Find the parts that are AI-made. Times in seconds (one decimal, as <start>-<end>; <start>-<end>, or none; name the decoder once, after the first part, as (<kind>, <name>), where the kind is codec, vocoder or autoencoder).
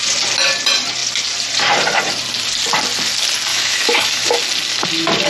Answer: 3.5-4.3 (autoencoder, DAC-VAE)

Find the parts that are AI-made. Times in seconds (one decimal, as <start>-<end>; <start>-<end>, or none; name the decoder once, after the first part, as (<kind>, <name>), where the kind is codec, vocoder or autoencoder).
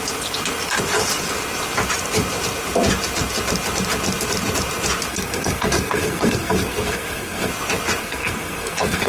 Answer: 5.1-7.5 (codec, SNAC); 8.0-9.1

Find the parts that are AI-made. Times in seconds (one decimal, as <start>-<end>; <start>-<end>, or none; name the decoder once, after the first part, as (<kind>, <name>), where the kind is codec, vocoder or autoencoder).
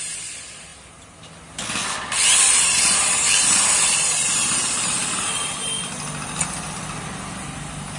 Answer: none